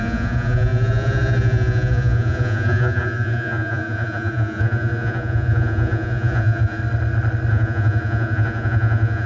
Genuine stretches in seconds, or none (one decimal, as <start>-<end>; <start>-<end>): 6.8-7.5